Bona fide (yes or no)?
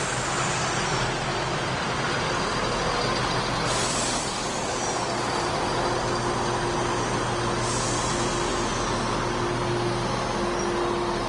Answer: yes